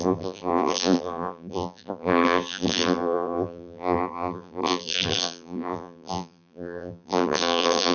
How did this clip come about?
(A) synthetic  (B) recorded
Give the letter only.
A